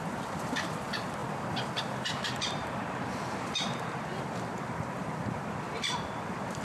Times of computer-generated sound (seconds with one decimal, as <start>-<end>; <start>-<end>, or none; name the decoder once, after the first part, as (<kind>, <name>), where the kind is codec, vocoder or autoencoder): 0.0-6.6 (vocoder, BigVGAN v2)